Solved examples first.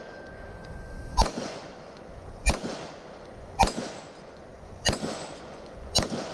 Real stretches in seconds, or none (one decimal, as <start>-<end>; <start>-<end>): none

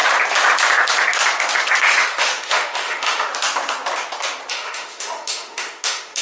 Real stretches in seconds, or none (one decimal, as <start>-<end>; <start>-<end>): 0.0-1.8; 3.3-4.5

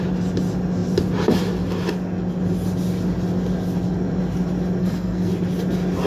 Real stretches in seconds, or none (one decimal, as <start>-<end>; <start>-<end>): 0.0-4.8; 5.3-6.1

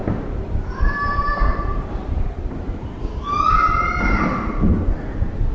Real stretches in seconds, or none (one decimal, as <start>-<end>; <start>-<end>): 3.0-5.5

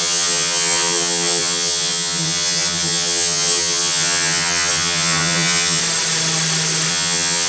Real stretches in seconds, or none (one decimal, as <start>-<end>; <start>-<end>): 5.8-6.9

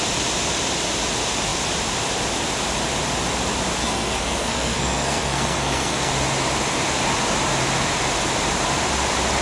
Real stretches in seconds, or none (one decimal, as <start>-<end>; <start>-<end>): 0.0-3.8; 6.1-9.4